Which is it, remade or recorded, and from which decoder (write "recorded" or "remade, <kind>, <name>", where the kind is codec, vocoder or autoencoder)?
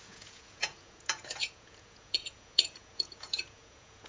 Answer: remade, vocoder, Vocos